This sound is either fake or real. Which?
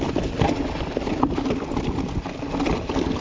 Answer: real